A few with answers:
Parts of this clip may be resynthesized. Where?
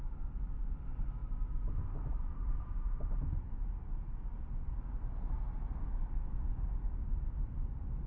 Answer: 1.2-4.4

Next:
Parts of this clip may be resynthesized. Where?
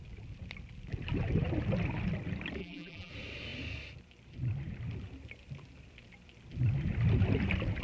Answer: 2.6-3.1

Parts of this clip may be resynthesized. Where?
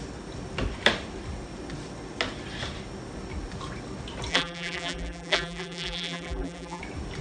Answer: 4.3-6.8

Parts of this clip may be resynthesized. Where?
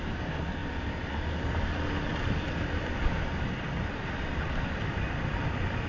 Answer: 2.1-5.9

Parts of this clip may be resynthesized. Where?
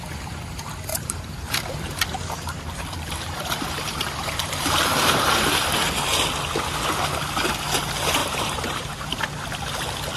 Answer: 0.9-5.5; 8.2-9.2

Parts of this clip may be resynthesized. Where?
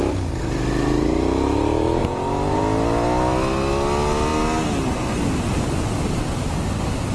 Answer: 2.0-2.6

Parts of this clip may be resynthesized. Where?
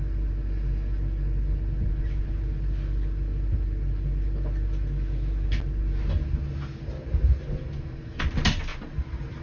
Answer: 8.7-9.4